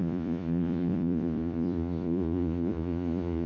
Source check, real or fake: fake